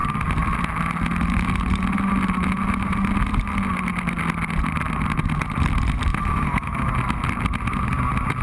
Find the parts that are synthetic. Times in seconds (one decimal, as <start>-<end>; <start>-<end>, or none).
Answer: 6.1-6.9